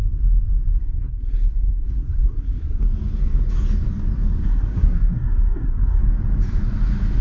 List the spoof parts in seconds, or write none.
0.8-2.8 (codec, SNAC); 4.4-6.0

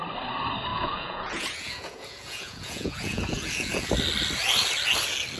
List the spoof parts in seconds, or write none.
0.7-3.9 (vocoder, Vocos)

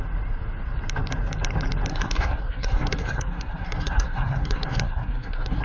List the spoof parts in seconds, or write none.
1.9-5.6 (codec, SNAC)

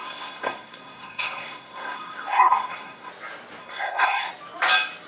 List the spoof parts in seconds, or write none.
0.0-3.1 (codec, SNAC); 3.6-4.3

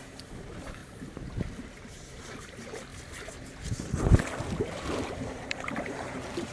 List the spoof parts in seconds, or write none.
0.0-0.8 (vocoder, BigVGAN v2); 2.1-2.9; 4.6-6.5

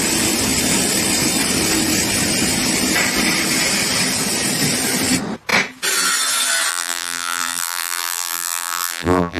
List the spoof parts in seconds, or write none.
6.7-9.4 (vocoder, BigVGAN v2)

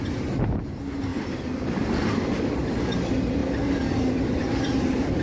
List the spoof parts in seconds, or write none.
1.1-2.8 (vocoder, BigVGAN v2); 3.4-4.5

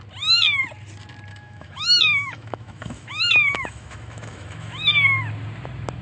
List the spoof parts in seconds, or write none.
1.3-4.9 (autoencoder, DAC-VAE)